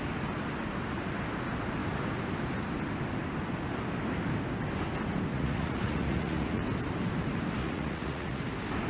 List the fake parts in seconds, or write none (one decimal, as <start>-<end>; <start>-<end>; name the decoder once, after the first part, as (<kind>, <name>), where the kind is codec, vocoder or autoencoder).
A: 5.3-6.6 (vocoder, Vocos); 7.6-8.4